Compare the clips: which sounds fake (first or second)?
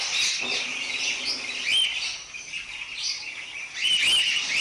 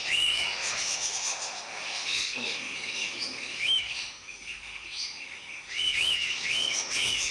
second